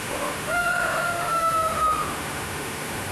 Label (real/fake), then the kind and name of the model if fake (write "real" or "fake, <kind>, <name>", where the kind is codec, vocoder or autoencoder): fake, autoencoder, DAC-VAE